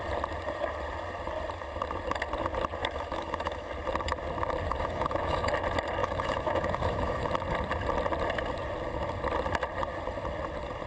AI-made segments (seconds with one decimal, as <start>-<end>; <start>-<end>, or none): 2.8-3.7; 4.7-5.5; 6.0-7.3